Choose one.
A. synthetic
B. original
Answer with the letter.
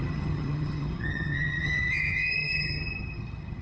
A